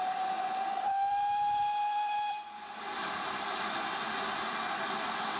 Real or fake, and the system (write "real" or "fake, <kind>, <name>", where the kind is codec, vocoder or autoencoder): real